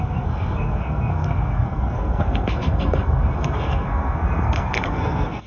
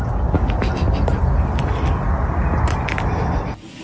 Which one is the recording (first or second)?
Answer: second